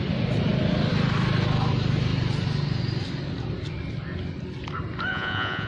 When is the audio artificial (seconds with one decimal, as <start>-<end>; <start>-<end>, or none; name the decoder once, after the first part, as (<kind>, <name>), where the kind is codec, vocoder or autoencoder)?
5.1-5.7 (vocoder, Vocos)